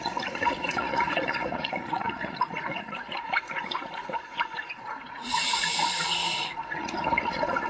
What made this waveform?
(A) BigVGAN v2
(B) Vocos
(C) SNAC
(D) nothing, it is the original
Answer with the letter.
B